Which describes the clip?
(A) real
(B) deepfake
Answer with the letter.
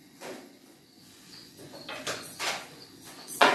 B